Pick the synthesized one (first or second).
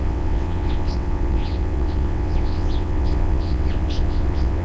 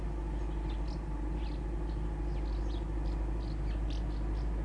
first